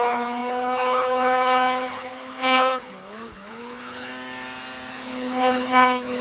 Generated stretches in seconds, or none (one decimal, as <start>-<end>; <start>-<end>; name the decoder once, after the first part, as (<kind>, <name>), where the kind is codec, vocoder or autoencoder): 0.0-4.1 (codec, HILCodec); 4.9-6.2